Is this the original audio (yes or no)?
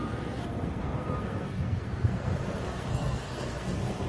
no